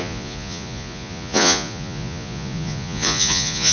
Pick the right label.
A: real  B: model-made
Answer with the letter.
B